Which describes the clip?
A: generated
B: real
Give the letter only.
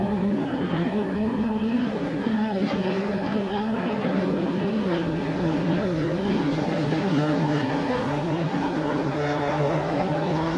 A